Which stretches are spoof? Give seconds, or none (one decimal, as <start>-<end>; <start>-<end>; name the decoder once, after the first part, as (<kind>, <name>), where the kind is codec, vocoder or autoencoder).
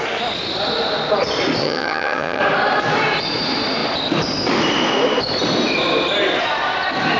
1.6-2.4 (vocoder, HiFi-GAN)